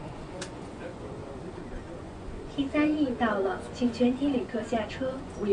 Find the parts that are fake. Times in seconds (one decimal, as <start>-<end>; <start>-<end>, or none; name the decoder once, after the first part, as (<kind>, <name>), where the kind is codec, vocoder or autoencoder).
0.0-1.2 (vocoder, Vocos); 2.0-5.5